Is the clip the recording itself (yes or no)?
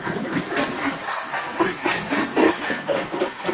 no